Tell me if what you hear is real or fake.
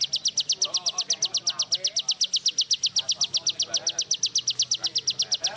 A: real